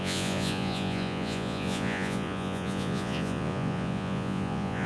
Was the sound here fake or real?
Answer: fake